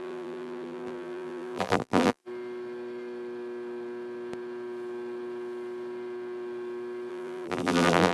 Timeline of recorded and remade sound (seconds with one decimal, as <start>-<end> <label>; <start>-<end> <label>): 0.0-2.2 remade; 2.2-7.1 recorded; 7.1-8.1 remade